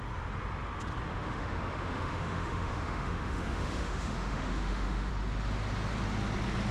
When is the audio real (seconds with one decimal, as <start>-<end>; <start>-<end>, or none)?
0.0-1.1; 5.1-6.7

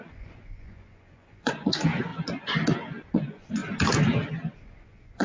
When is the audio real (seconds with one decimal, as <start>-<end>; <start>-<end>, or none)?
2.1-3.1; 3.6-4.6

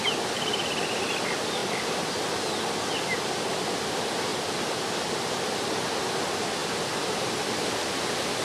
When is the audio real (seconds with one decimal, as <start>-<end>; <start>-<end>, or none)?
0.0-8.4

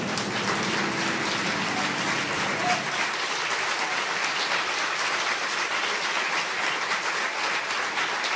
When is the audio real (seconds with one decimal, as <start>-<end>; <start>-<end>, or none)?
0.0-8.4

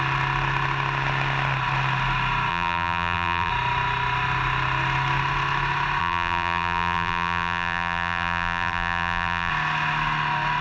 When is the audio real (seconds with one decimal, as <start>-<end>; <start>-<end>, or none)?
0.0-2.5; 3.5-6.0; 9.5-10.6